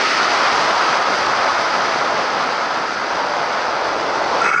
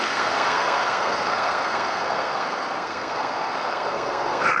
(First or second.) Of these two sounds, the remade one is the second